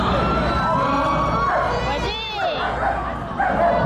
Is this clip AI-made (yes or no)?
no